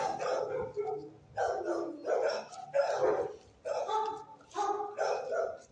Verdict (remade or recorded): recorded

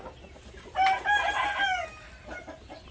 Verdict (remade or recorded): recorded